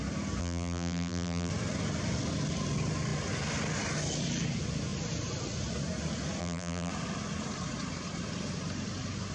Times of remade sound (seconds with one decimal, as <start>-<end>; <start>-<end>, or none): 0.4-1.5; 6.4-6.9